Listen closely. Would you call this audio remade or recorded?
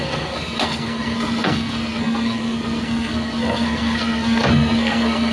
remade